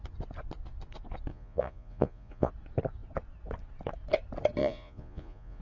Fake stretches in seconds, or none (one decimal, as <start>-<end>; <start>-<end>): 1.3-2.5; 4.6-5.6

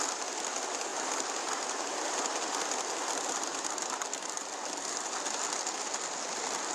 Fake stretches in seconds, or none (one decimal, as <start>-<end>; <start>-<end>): none

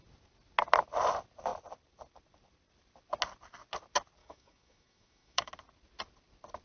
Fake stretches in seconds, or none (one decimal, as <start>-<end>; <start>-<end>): 4.2-5.5